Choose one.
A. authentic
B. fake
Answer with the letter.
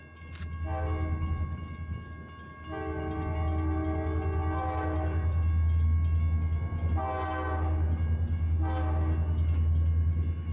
A